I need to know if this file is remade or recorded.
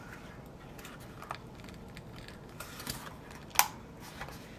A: recorded